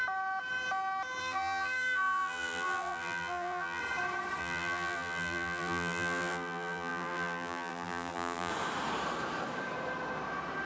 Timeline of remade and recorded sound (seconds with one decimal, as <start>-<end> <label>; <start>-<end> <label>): 0.0-1.2 recorded; 1.2-3.8 remade; 3.8-4.4 recorded; 4.4-8.5 remade; 8.5-10.7 recorded